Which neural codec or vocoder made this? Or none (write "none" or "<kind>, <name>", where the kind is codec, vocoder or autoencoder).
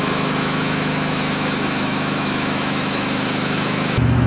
autoencoder, DAC-VAE